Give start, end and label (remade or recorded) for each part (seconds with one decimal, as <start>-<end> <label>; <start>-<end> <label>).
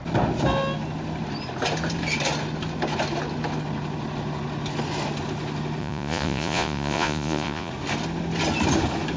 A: 0.0-5.8 recorded; 5.8-7.7 remade; 7.7-9.2 recorded